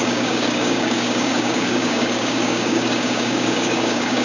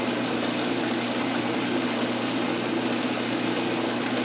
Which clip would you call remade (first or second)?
first